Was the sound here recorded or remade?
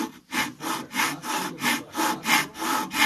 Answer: recorded